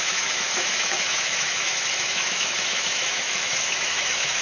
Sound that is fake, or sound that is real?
fake